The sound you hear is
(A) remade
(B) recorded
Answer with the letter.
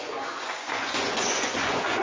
A